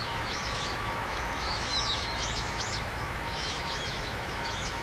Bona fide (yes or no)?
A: no